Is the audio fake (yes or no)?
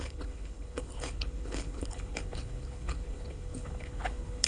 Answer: yes